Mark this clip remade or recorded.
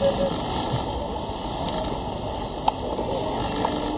recorded